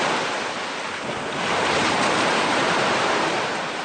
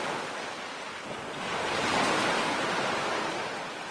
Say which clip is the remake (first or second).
first